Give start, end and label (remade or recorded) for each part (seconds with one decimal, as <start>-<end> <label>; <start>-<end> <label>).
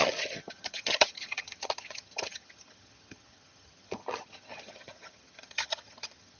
0.0-6.4 remade